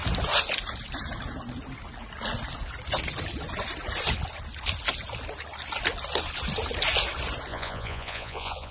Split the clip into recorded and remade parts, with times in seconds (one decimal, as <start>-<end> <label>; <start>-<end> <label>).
0.0-7.5 recorded; 7.5-8.7 remade